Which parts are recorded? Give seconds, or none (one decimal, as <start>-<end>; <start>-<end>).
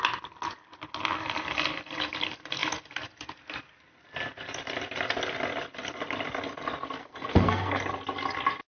0.0-7.0; 7.8-8.7